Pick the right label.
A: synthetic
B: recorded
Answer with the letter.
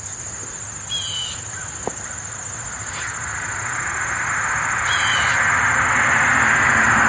B